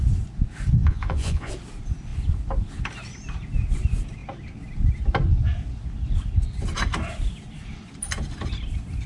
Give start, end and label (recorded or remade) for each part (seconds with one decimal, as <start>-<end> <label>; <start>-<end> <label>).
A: 0.0-0.8 recorded; 0.8-1.5 remade; 1.5-9.1 recorded